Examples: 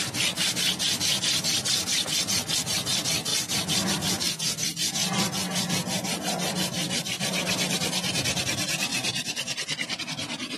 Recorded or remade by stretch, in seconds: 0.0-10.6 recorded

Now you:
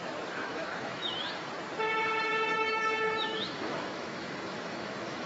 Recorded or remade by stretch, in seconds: 0.0-0.4 recorded; 0.4-1.5 remade; 1.5-2.3 recorded; 2.3-5.3 remade

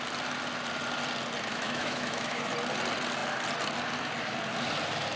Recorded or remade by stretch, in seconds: 0.0-1.5 recorded; 1.5-2.5 remade; 2.5-5.2 recorded

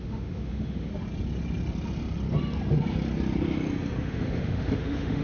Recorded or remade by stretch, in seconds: 0.0-0.9 remade; 0.9-4.0 recorded; 4.0-5.2 remade